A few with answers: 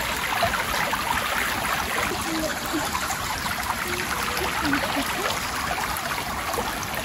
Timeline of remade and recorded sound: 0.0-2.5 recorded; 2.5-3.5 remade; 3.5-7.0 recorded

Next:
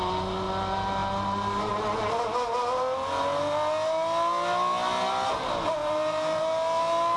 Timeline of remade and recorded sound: 0.0-1.0 recorded; 1.0-1.7 remade; 1.7-5.8 recorded; 5.8-6.4 remade; 6.4-7.2 recorded

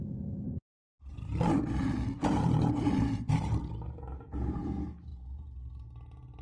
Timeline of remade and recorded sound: 0.0-0.8 recorded; 0.8-4.6 remade; 4.6-6.4 recorded

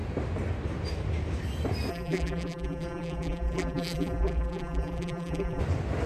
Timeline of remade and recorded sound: 0.0-1.9 recorded; 1.9-5.6 remade; 5.6-6.1 recorded

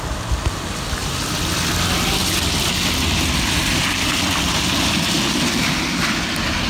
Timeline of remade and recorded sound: 0.0-6.7 recorded

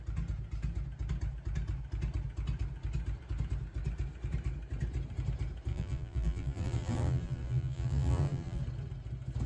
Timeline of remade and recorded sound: 0.0-5.7 recorded; 5.7-8.6 remade; 8.6-9.5 recorded

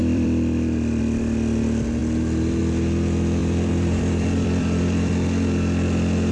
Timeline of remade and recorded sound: 0.0-1.0 remade; 1.0-3.4 recorded; 3.4-5.1 remade; 5.1-6.3 recorded

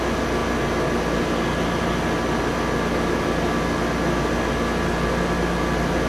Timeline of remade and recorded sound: 0.0-6.1 recorded